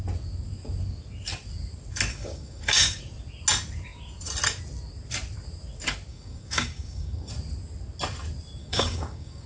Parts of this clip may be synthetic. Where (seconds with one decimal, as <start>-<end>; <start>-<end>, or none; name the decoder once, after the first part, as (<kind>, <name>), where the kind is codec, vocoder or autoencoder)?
2.1-3.0 (codec, DAC); 6.1-7.3; 8.6-9.5